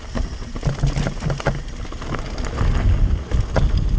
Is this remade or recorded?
recorded